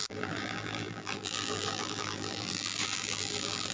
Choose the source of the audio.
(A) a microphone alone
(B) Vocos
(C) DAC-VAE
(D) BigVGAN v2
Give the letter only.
D